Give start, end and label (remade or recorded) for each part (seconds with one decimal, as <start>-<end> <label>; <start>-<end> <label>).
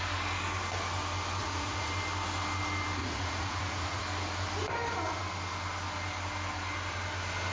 0.0-1.4 recorded; 1.4-1.9 remade; 1.9-3.0 recorded; 3.0-4.0 remade; 4.0-7.5 recorded